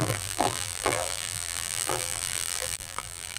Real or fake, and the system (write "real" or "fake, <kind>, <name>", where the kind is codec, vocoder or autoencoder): fake, vocoder, BigVGAN v2